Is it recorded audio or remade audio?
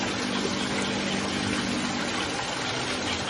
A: recorded